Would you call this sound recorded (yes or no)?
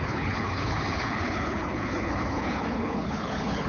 no